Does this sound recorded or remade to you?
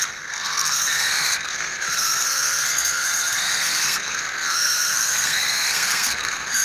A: remade